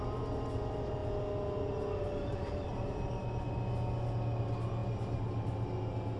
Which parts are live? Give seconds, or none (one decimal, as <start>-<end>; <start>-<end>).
0.0-6.2